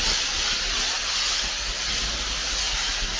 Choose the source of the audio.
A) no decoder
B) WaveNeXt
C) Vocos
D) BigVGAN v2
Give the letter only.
A